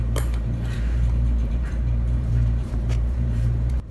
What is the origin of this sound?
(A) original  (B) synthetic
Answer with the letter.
B